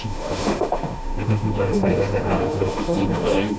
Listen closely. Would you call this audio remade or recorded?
remade